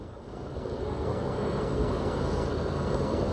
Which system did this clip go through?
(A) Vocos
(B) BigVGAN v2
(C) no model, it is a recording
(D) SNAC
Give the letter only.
D